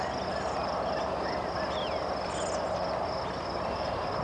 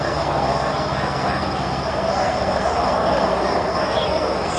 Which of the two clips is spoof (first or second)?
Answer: second